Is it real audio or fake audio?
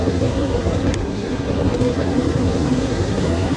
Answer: fake